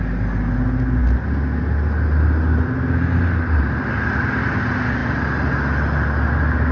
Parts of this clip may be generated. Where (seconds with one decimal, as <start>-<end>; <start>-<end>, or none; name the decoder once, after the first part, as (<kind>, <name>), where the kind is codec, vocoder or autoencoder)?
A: none